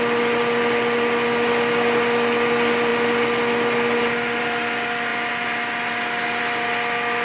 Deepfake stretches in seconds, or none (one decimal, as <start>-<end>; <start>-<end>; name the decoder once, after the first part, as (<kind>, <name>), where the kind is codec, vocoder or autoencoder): none